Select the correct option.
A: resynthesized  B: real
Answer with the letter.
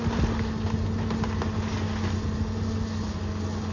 B